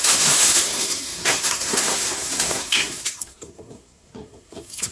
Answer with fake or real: fake